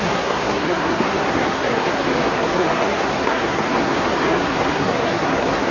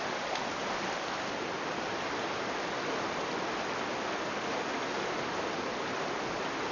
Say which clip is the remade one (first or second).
first